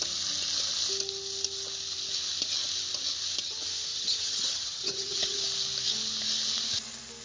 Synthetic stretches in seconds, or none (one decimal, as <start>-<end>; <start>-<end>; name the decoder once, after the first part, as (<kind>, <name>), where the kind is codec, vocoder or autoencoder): 3.9-5.4 (vocoder, HiFi-GAN)